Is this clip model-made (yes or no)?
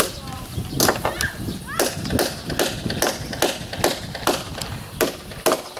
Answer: no